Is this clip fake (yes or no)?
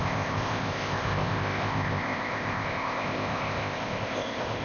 yes